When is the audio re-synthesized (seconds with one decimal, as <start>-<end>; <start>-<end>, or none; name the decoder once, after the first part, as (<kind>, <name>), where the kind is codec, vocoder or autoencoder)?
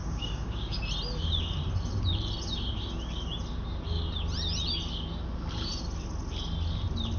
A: 0.0-0.8 (codec, DAC)